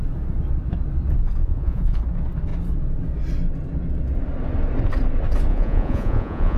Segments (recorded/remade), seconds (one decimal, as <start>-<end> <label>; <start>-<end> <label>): 0.0-1.4 recorded; 1.4-2.0 remade; 2.0-5.5 recorded; 5.5-6.6 remade